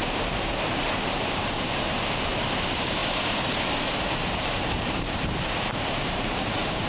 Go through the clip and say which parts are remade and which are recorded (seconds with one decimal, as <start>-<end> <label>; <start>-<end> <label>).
0.0-6.9 remade